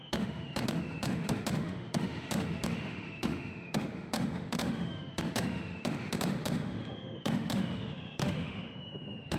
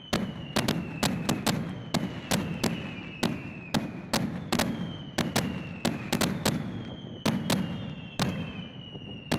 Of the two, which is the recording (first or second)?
second